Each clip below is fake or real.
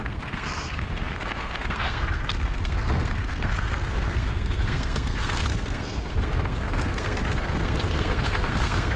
fake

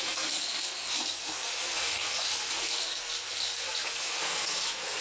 fake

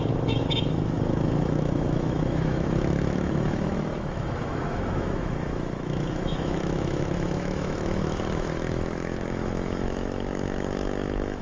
fake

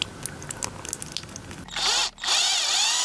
real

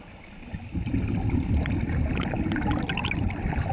real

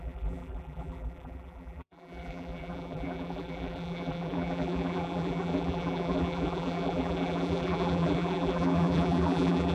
fake